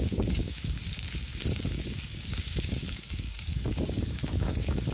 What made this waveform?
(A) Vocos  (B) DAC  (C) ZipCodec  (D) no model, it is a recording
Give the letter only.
B